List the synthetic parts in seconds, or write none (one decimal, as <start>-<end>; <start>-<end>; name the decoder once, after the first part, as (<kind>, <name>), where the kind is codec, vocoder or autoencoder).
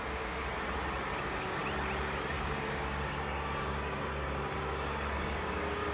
0.0-0.4 (codec, DAC); 1.2-1.6; 2.3-5.9